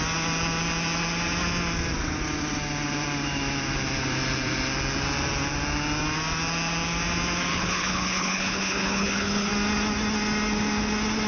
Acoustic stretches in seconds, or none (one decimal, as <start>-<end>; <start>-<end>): 0.0-7.5; 9.5-11.3